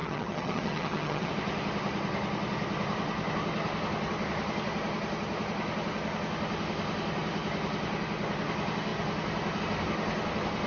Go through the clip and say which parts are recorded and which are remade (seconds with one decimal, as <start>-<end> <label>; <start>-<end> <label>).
0.0-1.3 remade; 1.3-10.7 recorded